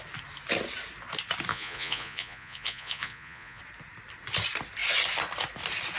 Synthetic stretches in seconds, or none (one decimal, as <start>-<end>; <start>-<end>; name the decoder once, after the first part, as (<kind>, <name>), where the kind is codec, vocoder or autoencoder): 1.5-3.6 (vocoder, Vocos)

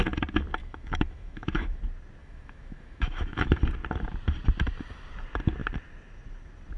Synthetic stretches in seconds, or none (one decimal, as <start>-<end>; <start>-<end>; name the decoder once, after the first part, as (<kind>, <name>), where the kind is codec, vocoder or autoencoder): 0.6-1.8 (autoencoder, DAC-VAE); 2.2-3.6

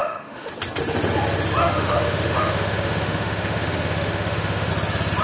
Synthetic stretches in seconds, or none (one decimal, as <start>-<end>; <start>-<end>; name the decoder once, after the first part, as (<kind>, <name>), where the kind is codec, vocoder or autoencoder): 0.0-0.5 (autoencoder, DAC-VAE); 1.6-4.7